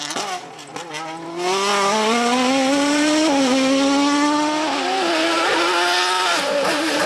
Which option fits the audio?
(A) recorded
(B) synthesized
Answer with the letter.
A